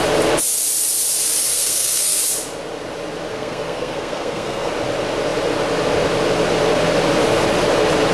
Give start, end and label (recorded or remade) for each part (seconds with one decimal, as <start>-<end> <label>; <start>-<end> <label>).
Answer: 0.0-1.5 recorded; 1.5-2.2 remade; 2.2-3.3 recorded; 3.3-4.7 remade; 4.7-8.1 recorded